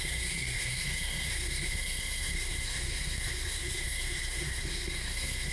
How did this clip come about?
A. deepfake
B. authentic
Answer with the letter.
A